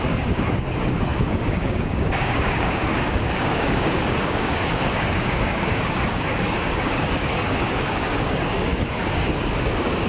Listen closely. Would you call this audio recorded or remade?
remade